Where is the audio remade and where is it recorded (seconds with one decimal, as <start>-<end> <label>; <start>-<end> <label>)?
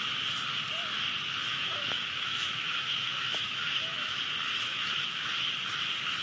0.0-1.5 recorded; 1.5-4.2 remade; 4.2-4.7 recorded; 4.7-5.3 remade; 5.3-6.2 recorded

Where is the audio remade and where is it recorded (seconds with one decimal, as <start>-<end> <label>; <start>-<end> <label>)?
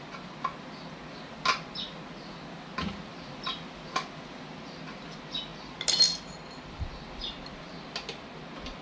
0.0-8.8 recorded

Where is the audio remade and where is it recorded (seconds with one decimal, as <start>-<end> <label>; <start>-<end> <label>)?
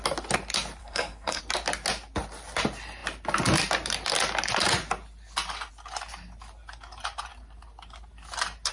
0.0-0.8 recorded; 0.8-1.4 remade; 1.4-8.7 recorded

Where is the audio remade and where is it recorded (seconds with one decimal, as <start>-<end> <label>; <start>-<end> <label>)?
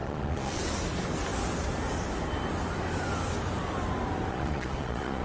0.0-0.6 remade; 0.6-4.3 recorded; 4.3-5.2 remade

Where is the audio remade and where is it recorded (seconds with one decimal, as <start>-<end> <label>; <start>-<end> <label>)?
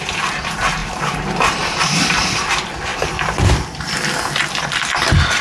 0.0-0.8 recorded; 0.8-2.4 remade; 2.4-5.4 recorded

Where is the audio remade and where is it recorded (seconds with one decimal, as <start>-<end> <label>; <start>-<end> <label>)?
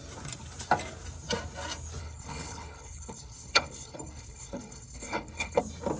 0.0-2.0 recorded; 2.0-5.6 remade; 5.6-6.0 recorded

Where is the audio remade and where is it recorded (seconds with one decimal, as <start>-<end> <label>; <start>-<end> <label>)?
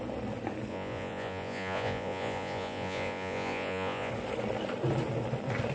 0.0-0.7 recorded; 0.7-4.1 remade; 4.1-5.7 recorded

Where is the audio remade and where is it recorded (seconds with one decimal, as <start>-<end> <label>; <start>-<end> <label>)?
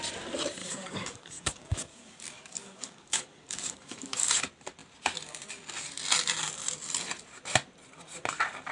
0.0-0.6 recorded; 0.6-4.3 remade; 4.3-8.7 recorded